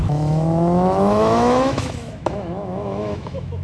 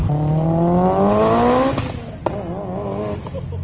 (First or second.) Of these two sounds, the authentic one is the second